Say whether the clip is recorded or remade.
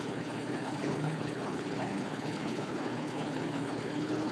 remade